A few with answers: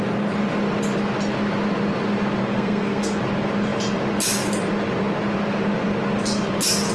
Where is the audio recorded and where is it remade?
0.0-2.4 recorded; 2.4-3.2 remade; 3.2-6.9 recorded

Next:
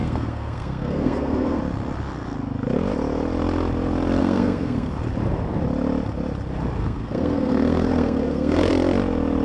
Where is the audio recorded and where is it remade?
0.0-1.6 remade; 1.6-4.2 recorded; 4.2-4.9 remade; 4.9-6.8 recorded; 6.8-8.7 remade; 8.7-9.4 recorded

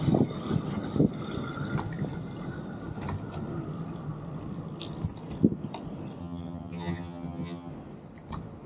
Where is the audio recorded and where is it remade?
0.0-6.2 recorded; 6.2-7.7 remade; 7.7-8.7 recorded

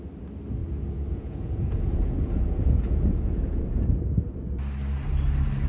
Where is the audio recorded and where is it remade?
0.0-0.6 recorded; 0.6-4.0 remade; 4.0-5.7 recorded

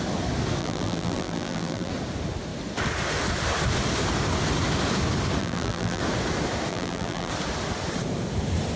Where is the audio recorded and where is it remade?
0.0-0.6 recorded; 0.6-1.9 remade; 1.9-5.4 recorded; 5.4-6.0 remade; 6.0-6.7 recorded; 6.7-7.3 remade; 7.3-8.8 recorded